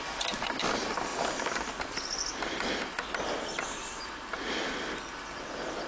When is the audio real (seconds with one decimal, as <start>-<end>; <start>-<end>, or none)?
0.0-5.9